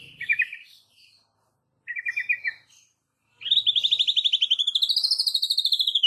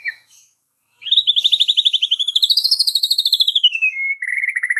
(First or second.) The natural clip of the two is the first